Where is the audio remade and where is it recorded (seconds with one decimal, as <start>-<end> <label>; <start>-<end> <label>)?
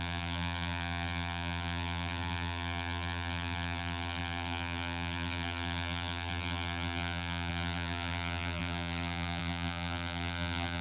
0.0-10.8 remade